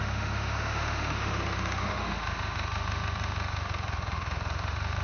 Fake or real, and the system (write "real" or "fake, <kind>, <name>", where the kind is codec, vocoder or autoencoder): fake, autoencoder, DAC-VAE